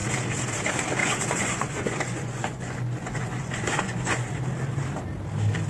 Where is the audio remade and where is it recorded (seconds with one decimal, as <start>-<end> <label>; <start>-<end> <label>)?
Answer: 0.0-1.0 recorded; 1.0-4.4 remade; 4.4-5.7 recorded